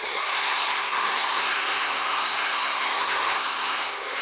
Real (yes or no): no